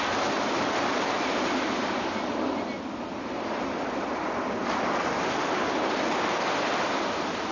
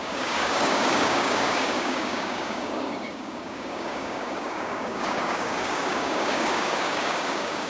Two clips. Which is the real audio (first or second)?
first